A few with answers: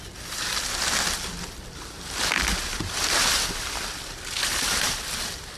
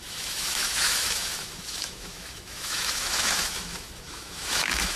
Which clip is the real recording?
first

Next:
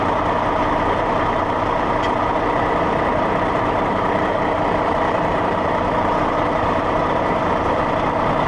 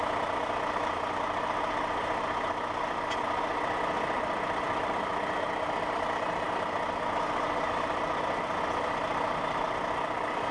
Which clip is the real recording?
second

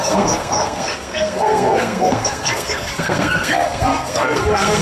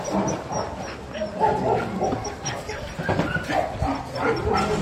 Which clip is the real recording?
second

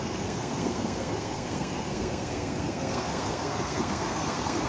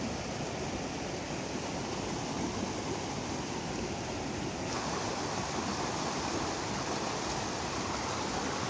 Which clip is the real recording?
second